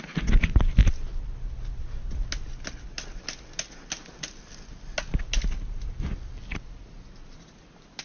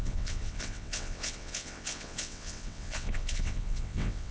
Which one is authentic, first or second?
first